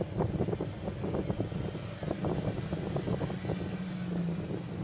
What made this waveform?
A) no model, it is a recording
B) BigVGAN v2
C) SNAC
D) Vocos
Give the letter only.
A